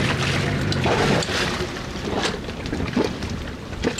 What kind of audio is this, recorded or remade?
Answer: recorded